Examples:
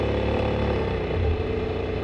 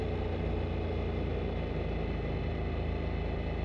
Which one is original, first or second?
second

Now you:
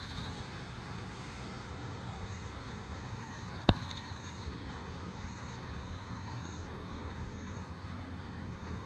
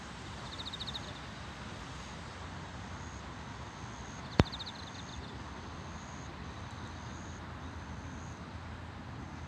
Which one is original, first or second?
second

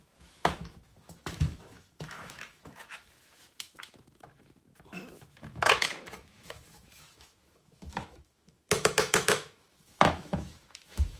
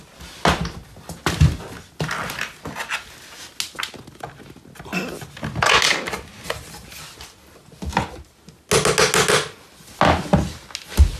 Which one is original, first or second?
second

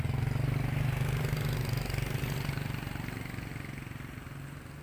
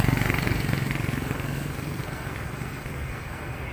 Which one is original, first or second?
first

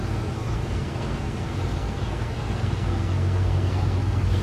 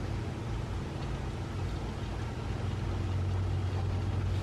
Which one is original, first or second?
second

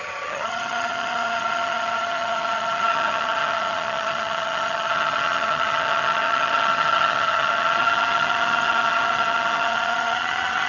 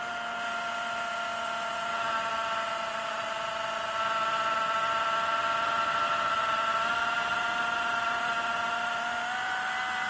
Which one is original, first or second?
second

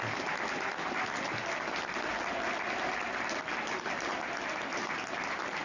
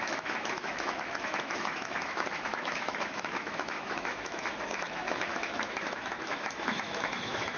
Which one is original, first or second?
first